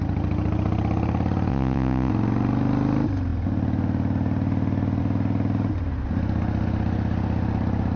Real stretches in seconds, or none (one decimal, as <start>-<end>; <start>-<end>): 0.0-1.5; 2.1-8.0